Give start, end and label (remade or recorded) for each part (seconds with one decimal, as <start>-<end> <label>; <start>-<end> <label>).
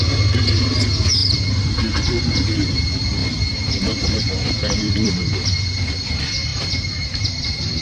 0.0-1.2 recorded; 1.2-2.2 remade; 2.2-3.2 recorded; 3.2-5.1 remade; 5.1-6.5 recorded; 6.5-7.8 remade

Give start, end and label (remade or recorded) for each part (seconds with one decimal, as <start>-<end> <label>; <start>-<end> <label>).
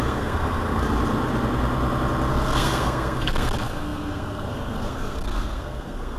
0.0-0.8 remade; 0.8-2.3 recorded; 2.3-6.2 remade